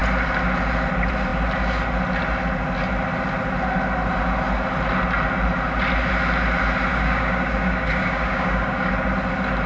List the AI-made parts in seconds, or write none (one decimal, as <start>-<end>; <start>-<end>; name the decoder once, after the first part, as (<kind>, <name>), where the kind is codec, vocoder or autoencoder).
6.9-8.9 (codec, DAC)

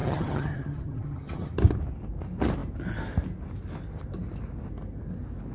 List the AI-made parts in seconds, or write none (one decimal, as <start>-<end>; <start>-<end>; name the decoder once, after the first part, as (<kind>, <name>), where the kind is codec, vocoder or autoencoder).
0.0-1.6 (vocoder, HiFi-GAN)

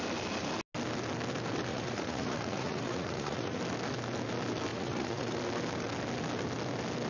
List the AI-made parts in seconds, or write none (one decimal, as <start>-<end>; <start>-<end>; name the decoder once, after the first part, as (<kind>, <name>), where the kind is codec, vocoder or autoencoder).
1.7-3.6 (vocoder, Vocos); 4.7-5.4

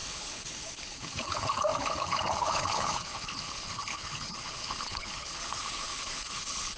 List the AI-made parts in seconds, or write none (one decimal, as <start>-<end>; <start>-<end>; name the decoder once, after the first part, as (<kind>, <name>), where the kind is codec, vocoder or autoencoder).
0.0-6.8 (codec, HILCodec)

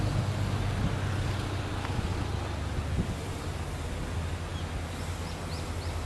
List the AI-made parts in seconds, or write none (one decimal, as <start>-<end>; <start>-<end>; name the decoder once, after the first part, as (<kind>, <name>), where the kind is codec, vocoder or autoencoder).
none

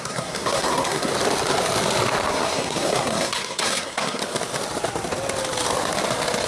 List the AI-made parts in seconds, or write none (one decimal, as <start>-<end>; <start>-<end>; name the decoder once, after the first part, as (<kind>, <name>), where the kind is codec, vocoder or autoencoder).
0.0-1.1 (codec, SNAC); 2.3-4.2